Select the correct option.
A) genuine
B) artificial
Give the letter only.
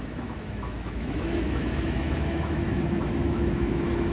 B